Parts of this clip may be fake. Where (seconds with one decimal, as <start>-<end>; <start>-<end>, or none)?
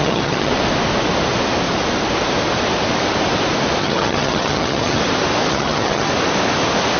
0.0-0.5; 3.8-5.0; 5.5-6.1